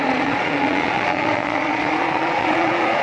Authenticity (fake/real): fake